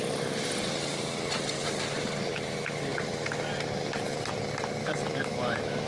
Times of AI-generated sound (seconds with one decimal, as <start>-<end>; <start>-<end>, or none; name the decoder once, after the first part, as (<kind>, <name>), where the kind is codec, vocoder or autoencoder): 4.8-5.9 (autoencoder, DAC-VAE)